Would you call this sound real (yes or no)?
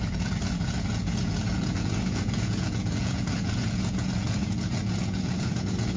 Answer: no